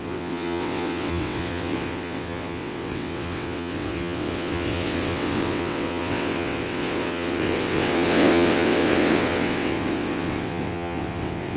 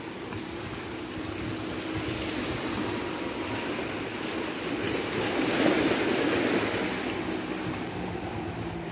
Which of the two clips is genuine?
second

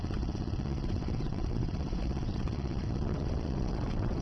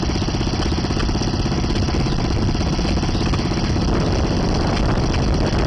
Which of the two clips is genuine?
second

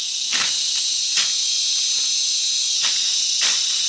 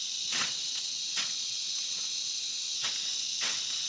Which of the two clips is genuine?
first